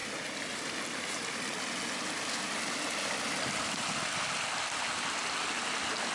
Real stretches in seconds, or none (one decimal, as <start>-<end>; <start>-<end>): 0.0-6.1